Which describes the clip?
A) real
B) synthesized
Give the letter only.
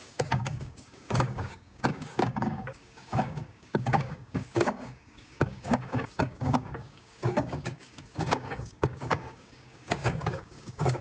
B